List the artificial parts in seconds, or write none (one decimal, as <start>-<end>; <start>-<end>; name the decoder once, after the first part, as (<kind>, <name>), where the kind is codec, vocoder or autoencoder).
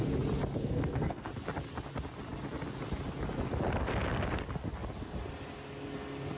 0.6-1.3 (codec, SNAC)